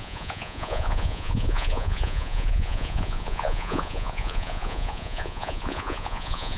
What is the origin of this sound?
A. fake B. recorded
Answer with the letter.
A